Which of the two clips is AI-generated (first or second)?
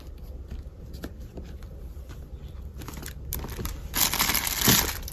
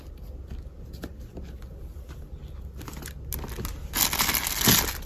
first